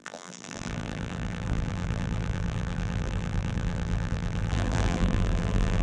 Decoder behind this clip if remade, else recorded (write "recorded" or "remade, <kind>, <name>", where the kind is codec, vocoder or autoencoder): remade, vocoder, BigVGAN v2